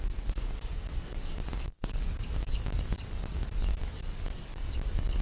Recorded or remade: remade